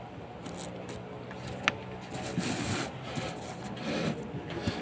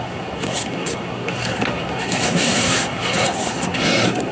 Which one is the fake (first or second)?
second